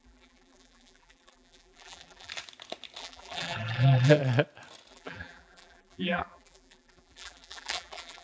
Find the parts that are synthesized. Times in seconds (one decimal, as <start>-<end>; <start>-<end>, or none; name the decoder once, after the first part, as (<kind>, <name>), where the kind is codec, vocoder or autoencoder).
0.0-2.3 (vocoder, BigVGAN v2); 3.0-4.2; 4.9-8.2